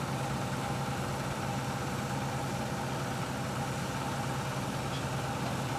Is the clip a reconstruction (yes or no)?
no